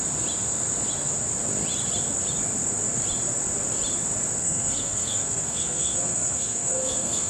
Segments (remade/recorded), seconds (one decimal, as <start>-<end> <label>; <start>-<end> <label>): 0.0-4.4 recorded; 4.4-7.3 remade